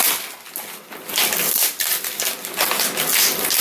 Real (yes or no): yes